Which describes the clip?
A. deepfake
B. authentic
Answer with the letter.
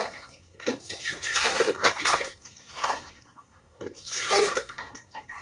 A